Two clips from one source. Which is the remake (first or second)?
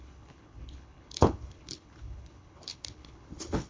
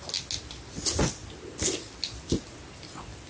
first